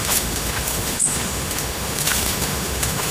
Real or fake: fake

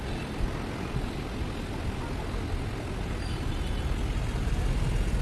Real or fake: real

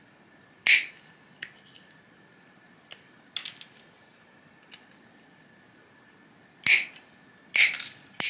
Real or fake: real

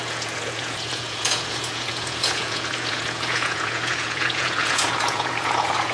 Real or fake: fake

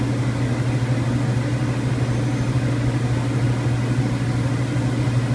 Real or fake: real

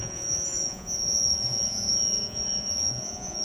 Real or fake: fake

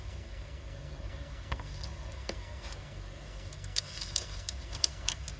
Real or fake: fake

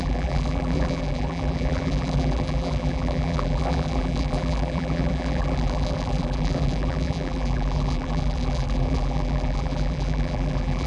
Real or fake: fake